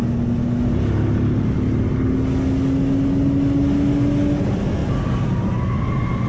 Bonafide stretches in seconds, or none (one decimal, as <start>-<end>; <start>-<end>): 0.0-6.3

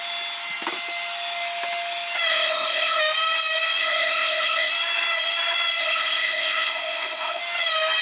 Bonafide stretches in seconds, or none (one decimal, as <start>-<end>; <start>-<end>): 0.0-2.3; 3.0-3.8; 4.7-5.8; 7.4-8.0

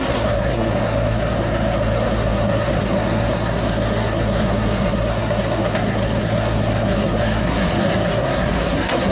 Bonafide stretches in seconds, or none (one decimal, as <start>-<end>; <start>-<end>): none

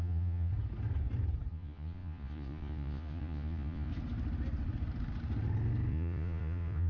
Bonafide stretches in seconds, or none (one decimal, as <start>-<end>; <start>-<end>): 0.5-1.5; 3.9-5.9

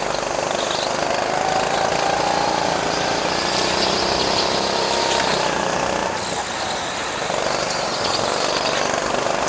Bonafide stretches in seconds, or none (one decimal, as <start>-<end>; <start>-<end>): 0.0-9.5